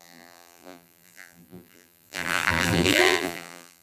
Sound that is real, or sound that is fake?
fake